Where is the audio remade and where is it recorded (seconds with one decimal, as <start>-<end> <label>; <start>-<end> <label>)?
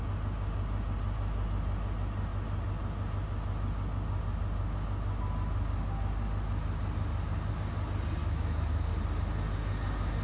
0.0-8.2 recorded; 8.2-8.9 remade; 8.9-10.2 recorded